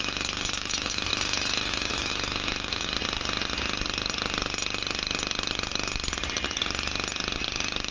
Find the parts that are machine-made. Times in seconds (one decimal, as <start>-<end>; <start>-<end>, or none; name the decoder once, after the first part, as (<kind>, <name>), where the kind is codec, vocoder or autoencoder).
0.0-2.9 (autoencoder, DAC-VAE)

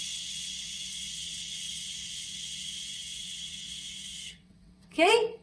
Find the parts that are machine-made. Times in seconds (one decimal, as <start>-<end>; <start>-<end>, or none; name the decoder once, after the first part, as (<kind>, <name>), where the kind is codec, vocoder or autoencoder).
0.0-5.4 (vocoder, WaveNeXt)